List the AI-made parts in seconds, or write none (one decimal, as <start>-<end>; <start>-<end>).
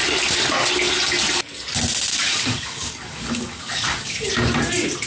2.1-4.3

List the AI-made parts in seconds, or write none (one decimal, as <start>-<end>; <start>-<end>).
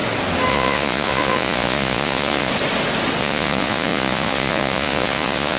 0.5-2.5; 3.2-5.6